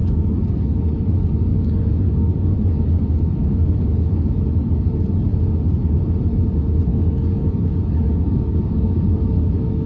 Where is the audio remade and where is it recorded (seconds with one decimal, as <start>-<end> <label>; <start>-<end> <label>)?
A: 0.0-1.1 remade; 1.1-1.5 recorded; 1.5-2.9 remade; 2.9-3.4 recorded; 3.4-4.9 remade; 4.9-6.9 recorded; 6.9-9.9 remade